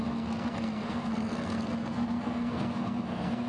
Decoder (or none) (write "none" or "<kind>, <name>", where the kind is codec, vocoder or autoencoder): codec, SNAC